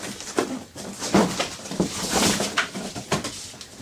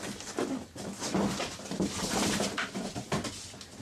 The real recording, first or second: second